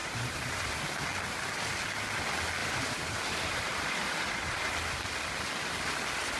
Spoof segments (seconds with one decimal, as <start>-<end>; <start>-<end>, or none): 0.0-0.8; 2.6-4.7